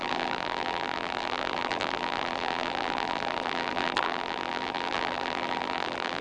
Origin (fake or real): fake